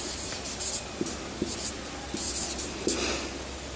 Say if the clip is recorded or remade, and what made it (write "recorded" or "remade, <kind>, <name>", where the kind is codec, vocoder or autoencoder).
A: recorded